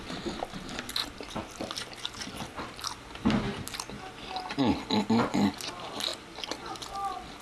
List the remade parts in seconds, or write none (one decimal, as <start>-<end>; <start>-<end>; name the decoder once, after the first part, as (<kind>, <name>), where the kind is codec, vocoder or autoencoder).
none